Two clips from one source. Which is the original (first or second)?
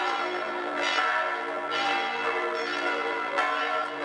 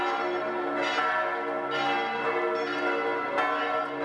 second